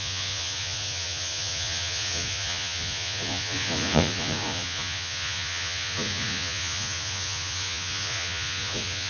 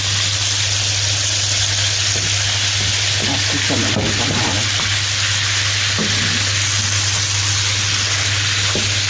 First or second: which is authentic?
second